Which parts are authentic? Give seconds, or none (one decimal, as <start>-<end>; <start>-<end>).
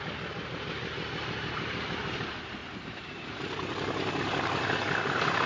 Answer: 0.0-2.6; 3.4-5.5